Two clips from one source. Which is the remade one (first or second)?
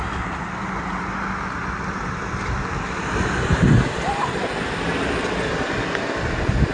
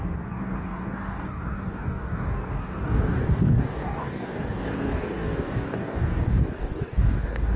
second